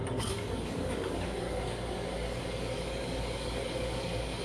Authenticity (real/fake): fake